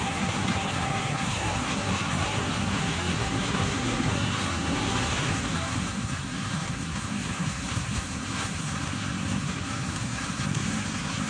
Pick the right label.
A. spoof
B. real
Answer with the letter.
A